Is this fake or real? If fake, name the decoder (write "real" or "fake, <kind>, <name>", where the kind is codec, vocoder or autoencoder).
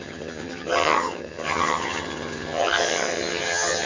fake, vocoder, HiFi-GAN